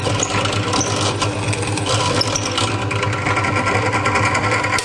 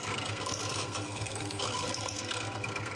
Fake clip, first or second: second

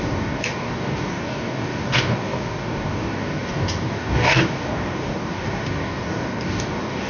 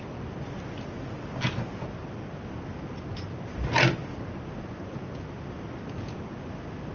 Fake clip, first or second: first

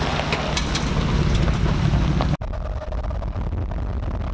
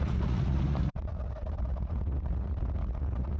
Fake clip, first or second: second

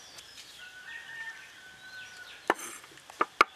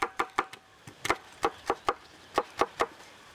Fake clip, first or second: second